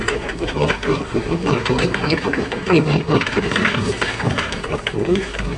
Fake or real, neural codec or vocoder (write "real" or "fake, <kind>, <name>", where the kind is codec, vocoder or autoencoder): fake, codec, SNAC